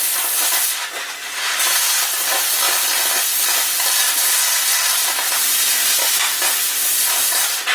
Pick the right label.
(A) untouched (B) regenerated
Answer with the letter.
A